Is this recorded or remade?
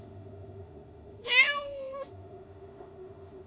remade